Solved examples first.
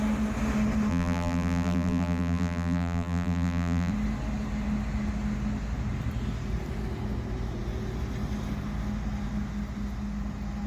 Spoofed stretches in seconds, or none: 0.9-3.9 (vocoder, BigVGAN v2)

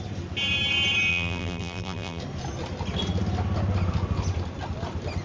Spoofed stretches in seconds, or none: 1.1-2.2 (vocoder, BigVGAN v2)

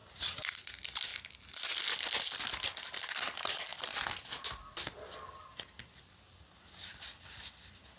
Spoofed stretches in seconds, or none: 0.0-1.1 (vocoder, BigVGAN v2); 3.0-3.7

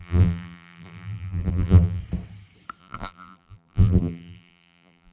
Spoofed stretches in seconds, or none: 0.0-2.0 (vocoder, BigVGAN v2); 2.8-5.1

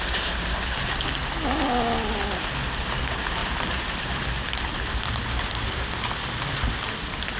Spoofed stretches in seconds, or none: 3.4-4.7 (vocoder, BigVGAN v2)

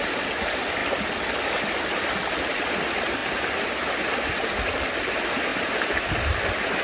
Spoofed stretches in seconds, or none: none

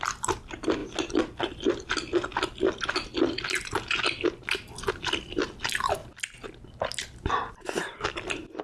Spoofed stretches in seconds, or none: 0.0-0.8 (vocoder, BigVGAN v2); 4.9-6.0

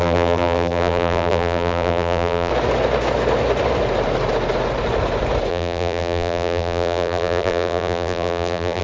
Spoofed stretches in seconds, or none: 0.0-2.5 (vocoder, BigVGAN v2); 5.5-8.8